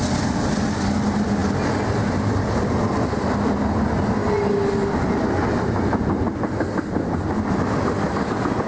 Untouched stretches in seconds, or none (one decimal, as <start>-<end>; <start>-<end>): 0.0-8.7